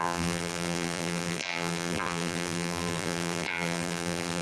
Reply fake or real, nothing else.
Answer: fake